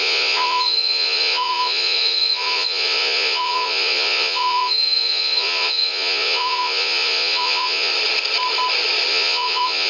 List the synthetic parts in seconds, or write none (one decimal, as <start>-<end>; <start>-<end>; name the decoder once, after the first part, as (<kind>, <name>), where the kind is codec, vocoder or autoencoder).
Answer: 0.0-7.9 (vocoder, Vocos); 9.1-9.9